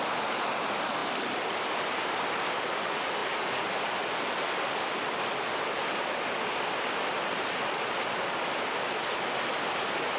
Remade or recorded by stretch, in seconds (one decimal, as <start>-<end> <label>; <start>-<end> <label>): 0.0-10.2 recorded

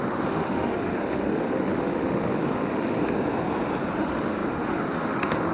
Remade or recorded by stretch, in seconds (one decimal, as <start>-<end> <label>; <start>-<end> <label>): 0.0-3.0 remade; 3.0-4.0 recorded; 4.0-5.5 remade

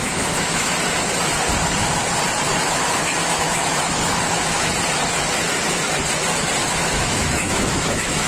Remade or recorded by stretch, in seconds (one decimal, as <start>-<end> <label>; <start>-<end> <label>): 0.0-0.7 remade; 0.7-2.5 recorded; 2.5-4.7 remade; 4.7-6.6 recorded; 6.6-8.3 remade

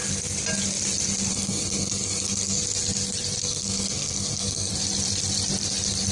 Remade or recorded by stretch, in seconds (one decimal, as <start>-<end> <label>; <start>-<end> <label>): 0.0-1.3 recorded; 1.3-2.6 remade; 2.6-3.4 recorded; 3.4-4.7 remade; 4.7-6.1 recorded

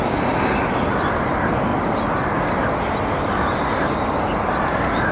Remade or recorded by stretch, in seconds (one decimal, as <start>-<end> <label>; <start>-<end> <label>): 0.0-5.1 recorded

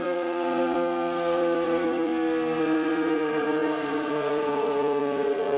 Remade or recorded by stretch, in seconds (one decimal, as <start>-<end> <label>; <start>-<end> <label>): 0.0-2.1 remade; 2.1-2.6 recorded; 2.6-5.6 remade

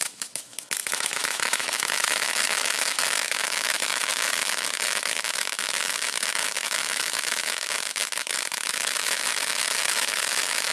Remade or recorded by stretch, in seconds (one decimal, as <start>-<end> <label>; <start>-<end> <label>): 0.0-10.7 remade

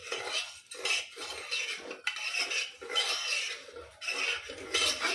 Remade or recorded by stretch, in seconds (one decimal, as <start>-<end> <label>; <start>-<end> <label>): 0.0-5.1 recorded